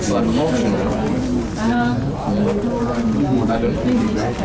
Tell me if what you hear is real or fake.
real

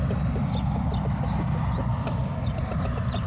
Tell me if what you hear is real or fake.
real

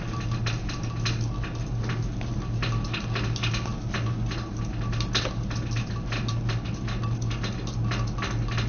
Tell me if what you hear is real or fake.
real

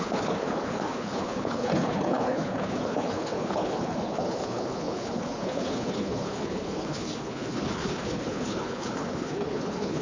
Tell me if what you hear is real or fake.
fake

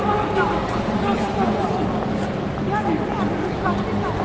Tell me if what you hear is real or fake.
real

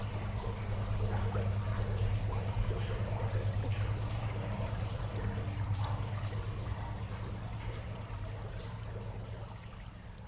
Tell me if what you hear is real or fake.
real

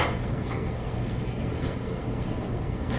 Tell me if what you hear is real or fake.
fake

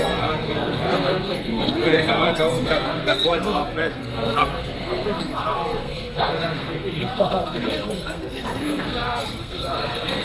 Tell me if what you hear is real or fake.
fake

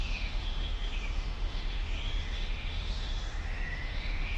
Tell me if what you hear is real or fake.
fake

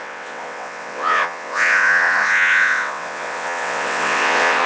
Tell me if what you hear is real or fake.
fake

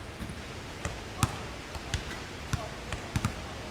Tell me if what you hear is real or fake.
real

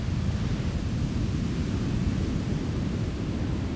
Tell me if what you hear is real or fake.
real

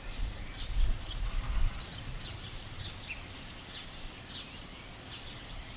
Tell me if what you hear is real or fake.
fake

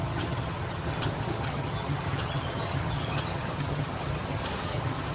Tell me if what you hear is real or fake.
fake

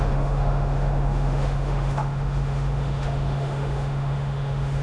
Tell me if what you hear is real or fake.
fake